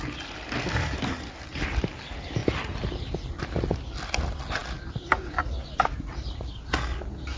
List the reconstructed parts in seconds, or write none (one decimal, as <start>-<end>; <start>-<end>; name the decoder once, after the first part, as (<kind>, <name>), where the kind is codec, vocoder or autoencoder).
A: none